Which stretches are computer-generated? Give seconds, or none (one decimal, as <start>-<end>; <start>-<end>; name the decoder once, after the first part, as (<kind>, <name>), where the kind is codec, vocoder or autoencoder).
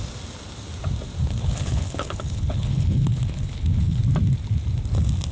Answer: 1.4-4.0 (codec, HILCodec)